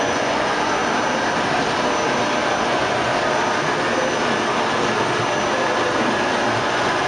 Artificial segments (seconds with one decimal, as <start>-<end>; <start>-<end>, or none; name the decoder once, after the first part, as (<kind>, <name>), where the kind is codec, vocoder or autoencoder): 0.0-0.8 (vocoder, Vocos); 2.6-3.1; 6.6-7.1